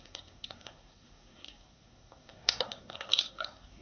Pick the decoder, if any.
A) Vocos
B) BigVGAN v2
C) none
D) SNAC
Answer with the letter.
D